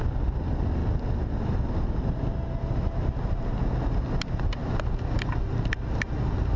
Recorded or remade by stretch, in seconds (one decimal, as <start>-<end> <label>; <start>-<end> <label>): 0.0-6.6 recorded

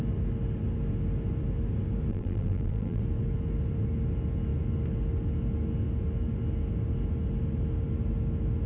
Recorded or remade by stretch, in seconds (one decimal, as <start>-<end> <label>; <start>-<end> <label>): 0.0-2.1 recorded; 2.1-3.0 remade; 3.0-8.7 recorded

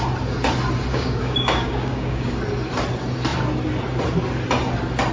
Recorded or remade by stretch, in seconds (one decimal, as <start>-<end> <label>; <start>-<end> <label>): 0.0-0.9 recorded; 0.9-2.3 remade; 2.3-5.1 recorded

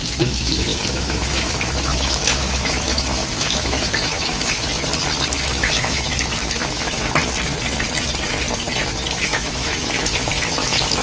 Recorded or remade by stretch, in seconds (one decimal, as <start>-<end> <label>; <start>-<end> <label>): 0.0-4.7 remade; 4.7-5.3 recorded; 5.3-7.0 remade; 7.0-9.1 recorded; 9.1-11.0 remade

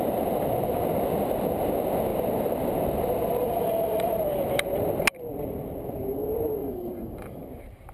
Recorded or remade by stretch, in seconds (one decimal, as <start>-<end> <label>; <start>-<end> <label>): 0.0-3.4 recorded; 3.4-4.1 remade; 4.1-6.6 recorded; 6.6-7.4 remade; 7.4-7.9 recorded

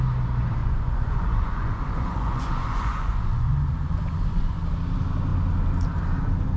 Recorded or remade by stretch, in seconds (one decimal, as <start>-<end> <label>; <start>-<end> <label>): 0.0-0.6 recorded; 0.6-4.6 remade; 4.6-6.6 recorded